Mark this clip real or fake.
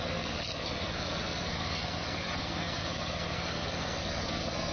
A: fake